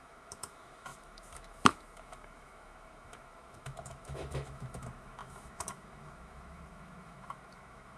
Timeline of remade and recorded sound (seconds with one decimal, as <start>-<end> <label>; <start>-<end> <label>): 0.0-8.0 remade